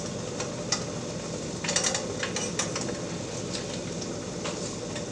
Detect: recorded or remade recorded